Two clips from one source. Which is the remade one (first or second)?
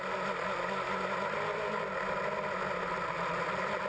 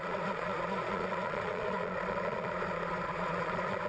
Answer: second